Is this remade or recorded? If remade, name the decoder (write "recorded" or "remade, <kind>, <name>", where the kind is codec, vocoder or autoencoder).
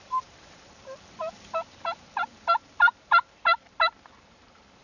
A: remade, vocoder, BigVGAN v2